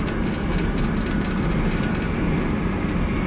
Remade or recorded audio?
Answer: recorded